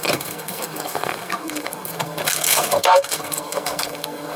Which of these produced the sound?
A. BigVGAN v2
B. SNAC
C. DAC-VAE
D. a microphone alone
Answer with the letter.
B